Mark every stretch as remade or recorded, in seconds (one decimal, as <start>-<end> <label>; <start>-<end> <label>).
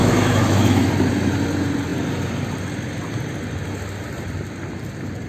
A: 0.0-0.9 remade; 0.9-5.3 recorded